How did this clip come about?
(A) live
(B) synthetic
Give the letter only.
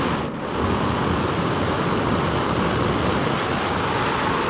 A